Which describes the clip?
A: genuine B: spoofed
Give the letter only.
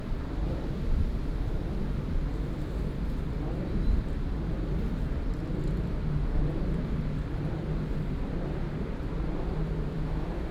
B